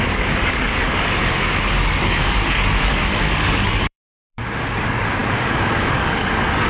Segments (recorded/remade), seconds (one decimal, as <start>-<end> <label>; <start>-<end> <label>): 0.0-6.7 remade